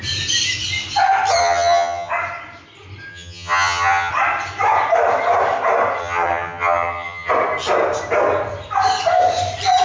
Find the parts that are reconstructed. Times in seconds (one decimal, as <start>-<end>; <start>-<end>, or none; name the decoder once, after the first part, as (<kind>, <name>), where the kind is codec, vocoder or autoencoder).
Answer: 1.4-2.1 (vocoder, HiFi-GAN); 3.1-4.1; 6.0-7.3